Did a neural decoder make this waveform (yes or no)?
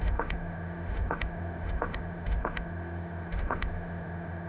yes